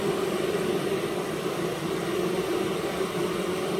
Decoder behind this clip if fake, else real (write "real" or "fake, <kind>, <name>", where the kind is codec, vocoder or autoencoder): real